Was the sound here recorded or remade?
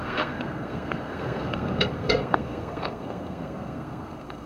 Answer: remade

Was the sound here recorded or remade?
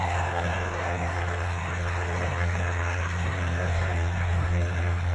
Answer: remade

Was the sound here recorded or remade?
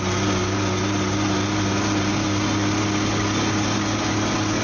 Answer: recorded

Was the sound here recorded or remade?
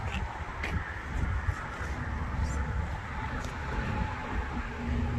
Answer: recorded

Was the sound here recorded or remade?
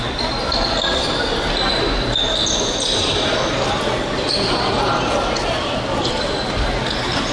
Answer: recorded